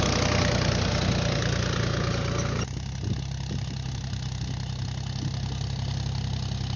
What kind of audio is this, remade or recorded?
recorded